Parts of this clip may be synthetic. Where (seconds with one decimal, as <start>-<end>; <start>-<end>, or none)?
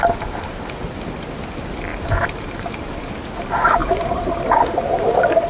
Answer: 1.9-3.1; 3.8-5.1